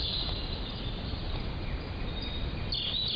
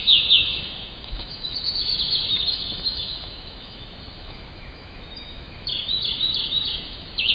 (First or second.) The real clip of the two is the first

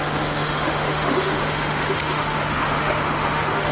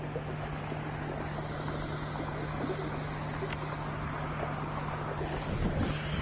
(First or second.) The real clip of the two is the second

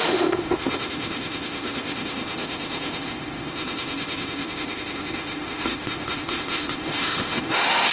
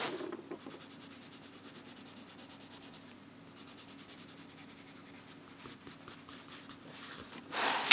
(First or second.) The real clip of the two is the second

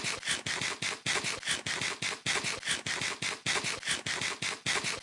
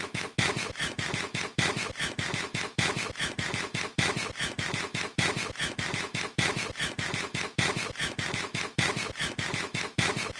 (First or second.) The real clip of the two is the first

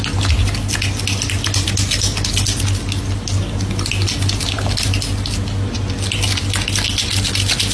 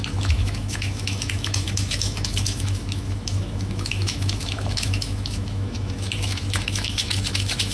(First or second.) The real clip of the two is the first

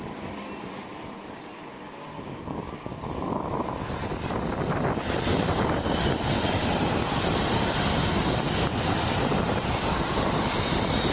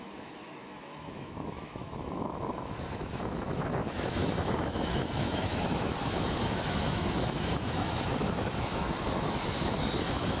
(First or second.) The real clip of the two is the first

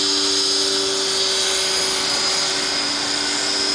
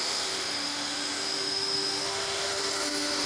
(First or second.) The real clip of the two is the first